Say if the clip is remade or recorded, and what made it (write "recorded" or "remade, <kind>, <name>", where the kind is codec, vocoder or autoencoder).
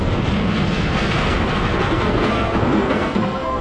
remade, codec, SNAC